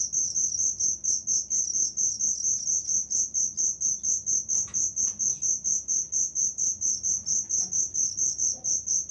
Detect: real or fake real